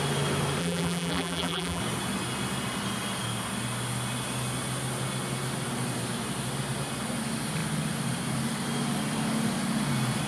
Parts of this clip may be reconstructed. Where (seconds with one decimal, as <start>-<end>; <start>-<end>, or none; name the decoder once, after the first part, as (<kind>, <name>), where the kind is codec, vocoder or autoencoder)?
0.6-1.8 (vocoder, BigVGAN v2)